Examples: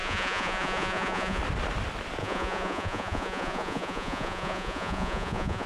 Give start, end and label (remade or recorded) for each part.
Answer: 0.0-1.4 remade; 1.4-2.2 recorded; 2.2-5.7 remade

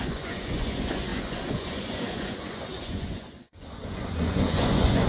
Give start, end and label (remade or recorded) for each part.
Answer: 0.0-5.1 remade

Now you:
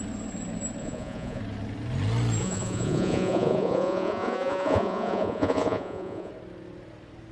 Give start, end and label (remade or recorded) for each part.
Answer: 0.0-0.8 recorded; 0.8-1.4 remade; 1.4-2.4 recorded; 2.4-6.3 remade; 6.3-7.3 recorded

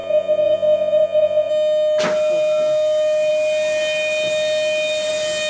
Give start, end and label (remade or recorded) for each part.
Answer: 0.0-1.5 remade; 1.5-5.5 recorded